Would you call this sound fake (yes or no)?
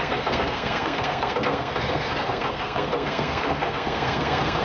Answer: yes